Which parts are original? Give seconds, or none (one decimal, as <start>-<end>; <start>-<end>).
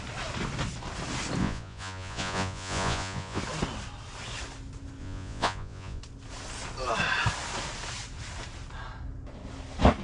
0.0-1.4; 3.4-5.0; 6.0-10.0